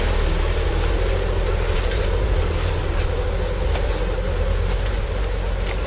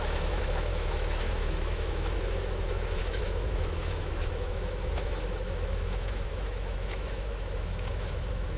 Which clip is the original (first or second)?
first